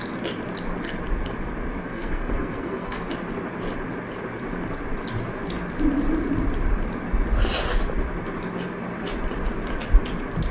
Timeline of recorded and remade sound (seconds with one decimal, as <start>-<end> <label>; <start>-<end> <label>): 0.0-1.8 recorded; 1.8-3.0 remade; 3.0-10.5 recorded